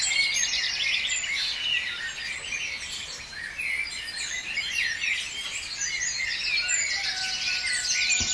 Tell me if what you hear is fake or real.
real